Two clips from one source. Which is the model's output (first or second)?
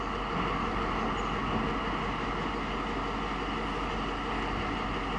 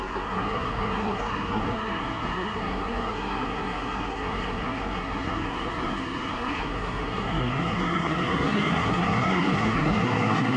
second